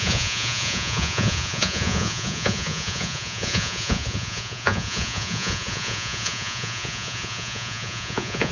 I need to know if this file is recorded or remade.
remade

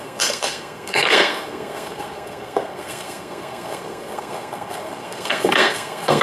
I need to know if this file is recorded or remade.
remade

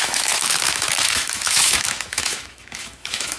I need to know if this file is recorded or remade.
remade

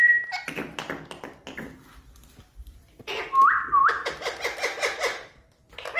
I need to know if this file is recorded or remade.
recorded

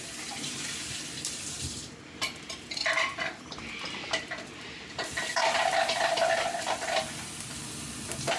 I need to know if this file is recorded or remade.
remade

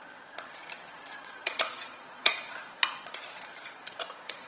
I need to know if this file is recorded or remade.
remade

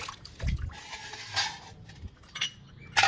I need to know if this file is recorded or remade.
recorded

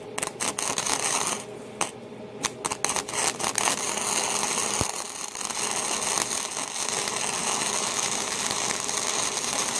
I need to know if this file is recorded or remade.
recorded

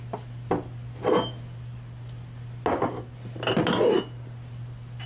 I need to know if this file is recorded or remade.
recorded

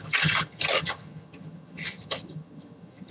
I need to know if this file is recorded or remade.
remade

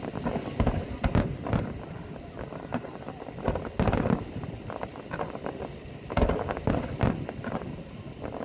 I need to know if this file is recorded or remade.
recorded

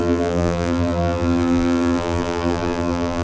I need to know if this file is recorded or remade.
remade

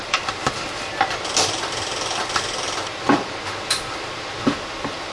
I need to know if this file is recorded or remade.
recorded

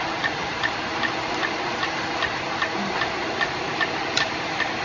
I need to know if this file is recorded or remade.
remade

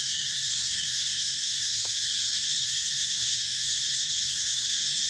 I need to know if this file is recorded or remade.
remade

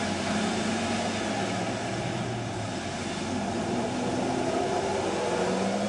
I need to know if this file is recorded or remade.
recorded